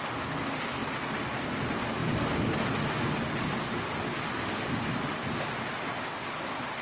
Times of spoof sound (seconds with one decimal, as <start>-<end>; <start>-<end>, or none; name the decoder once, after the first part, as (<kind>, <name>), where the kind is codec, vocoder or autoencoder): none